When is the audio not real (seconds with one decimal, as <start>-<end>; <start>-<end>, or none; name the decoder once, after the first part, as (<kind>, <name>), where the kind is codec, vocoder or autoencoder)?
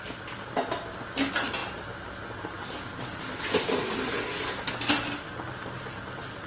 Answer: none